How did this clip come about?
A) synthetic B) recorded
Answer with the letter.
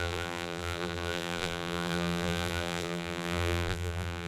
A